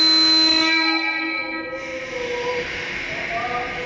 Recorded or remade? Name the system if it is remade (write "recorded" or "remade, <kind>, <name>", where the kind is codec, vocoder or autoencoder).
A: recorded